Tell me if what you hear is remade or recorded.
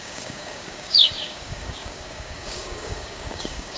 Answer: remade